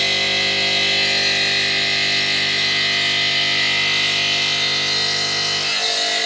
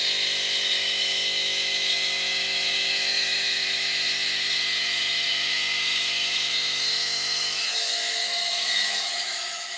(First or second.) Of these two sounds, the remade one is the second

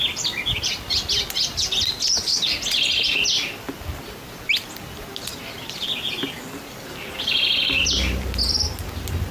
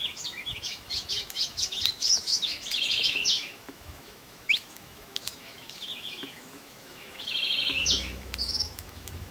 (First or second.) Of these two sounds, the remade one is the second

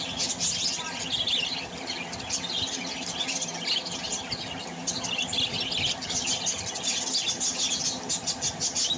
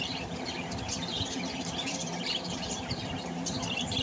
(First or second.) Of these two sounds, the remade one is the second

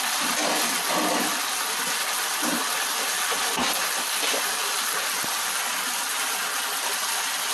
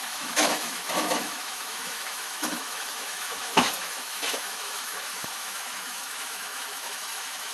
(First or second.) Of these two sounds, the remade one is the second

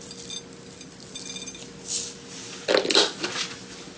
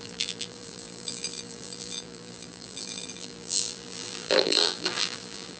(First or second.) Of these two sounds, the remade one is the second